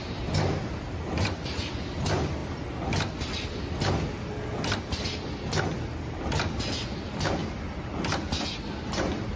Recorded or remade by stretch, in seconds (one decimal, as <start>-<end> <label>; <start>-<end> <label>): 0.0-9.4 recorded